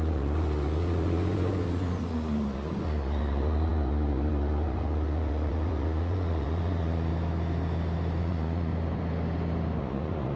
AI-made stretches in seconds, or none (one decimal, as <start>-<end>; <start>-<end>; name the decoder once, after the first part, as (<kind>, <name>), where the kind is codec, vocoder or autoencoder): 0.0-7.1 (vocoder, Vocos); 8.2-8.7; 9.8-10.4